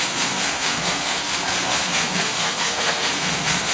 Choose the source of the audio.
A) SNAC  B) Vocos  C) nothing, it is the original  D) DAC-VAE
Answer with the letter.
A